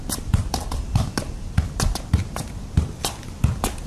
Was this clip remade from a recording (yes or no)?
no